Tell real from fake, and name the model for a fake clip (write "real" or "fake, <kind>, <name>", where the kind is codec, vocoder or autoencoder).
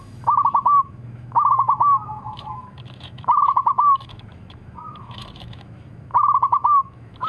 fake, autoencoder, DAC-VAE